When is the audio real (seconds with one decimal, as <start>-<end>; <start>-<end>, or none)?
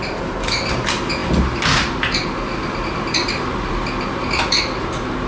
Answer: 0.0-5.3